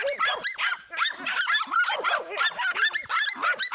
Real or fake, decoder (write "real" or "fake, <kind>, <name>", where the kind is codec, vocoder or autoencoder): real